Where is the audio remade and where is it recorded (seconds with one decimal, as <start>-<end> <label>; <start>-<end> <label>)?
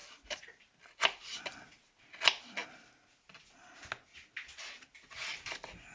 0.0-5.9 recorded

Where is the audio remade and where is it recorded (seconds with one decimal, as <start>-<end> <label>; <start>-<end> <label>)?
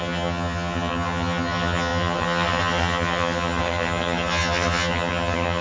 0.0-5.6 remade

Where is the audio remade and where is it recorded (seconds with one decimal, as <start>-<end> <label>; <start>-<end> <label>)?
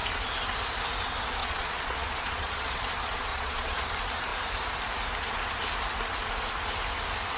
0.0-1.4 recorded; 1.4-2.8 remade; 2.8-3.3 recorded; 3.3-3.8 remade; 3.8-7.4 recorded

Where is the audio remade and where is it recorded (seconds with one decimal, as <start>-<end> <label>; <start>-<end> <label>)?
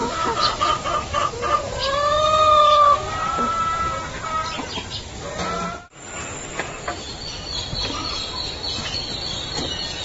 0.0-10.0 recorded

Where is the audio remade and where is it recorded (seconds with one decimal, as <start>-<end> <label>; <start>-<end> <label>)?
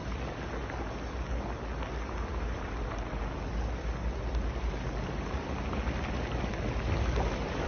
0.0-7.7 recorded